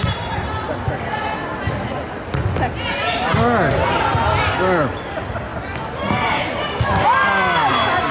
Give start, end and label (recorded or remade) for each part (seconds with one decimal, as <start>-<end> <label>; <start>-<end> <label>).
0.0-8.1 recorded